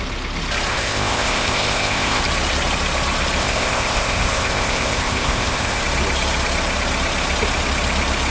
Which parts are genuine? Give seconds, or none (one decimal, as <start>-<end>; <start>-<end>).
0.0-0.7; 2.2-3.4; 5.8-8.3